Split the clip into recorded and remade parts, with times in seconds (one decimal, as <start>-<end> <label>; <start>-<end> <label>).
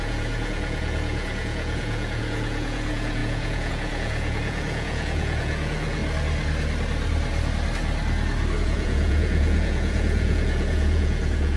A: 0.0-6.0 remade; 6.0-8.6 recorded; 8.6-11.6 remade